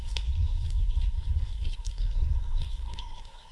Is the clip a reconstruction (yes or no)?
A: yes